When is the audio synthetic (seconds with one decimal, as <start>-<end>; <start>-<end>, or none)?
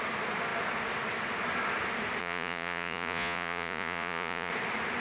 2.2-4.5